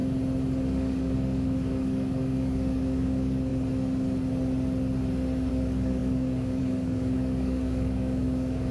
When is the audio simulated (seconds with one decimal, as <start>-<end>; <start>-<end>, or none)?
0.6-3.5; 5.5-8.7